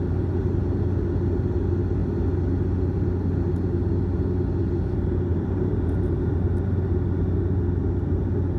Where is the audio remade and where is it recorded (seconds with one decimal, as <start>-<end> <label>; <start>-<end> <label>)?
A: 0.0-5.3 recorded; 5.3-6.3 remade; 6.3-8.6 recorded